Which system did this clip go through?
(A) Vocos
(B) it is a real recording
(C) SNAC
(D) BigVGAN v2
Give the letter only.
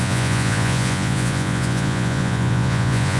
A